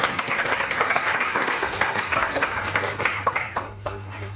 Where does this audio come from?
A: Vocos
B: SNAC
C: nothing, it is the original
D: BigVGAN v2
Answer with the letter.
B